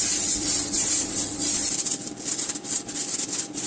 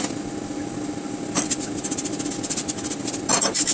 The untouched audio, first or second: second